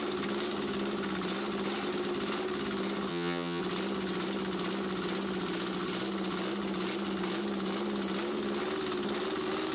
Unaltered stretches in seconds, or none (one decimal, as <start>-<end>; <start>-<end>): 0.0-3.1; 3.6-9.7